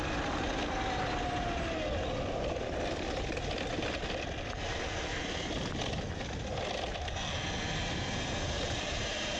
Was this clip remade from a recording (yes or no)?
no